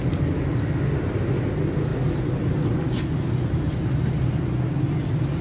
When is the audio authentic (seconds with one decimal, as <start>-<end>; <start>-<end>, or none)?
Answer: 0.0-5.4